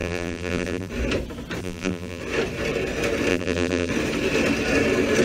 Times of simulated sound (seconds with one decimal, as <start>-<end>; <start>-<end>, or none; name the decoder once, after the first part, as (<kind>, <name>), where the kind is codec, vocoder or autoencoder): 0.0-0.9 (vocoder, BigVGAN v2); 1.6-2.2; 3.3-3.9